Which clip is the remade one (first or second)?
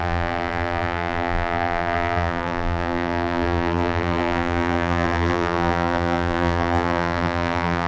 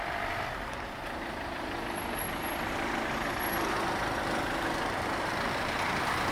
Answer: first